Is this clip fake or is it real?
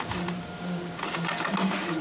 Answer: real